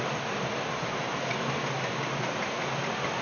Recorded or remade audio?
remade